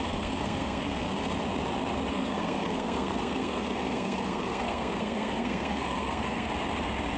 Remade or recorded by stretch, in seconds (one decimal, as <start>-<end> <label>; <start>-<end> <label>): 0.0-1.1 remade; 1.1-2.1 recorded; 2.1-6.5 remade; 6.5-7.2 recorded